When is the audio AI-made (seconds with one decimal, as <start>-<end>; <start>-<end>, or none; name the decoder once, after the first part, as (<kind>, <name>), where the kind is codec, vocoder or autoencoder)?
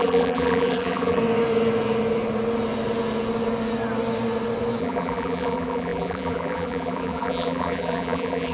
0.0-1.2 (vocoder, BigVGAN v2); 4.8-8.5